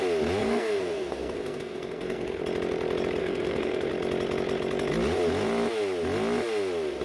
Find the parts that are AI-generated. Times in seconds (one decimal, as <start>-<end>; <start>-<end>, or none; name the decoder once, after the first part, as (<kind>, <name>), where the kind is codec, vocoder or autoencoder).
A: 0.4-2.4 (codec, SNAC); 3.2-3.9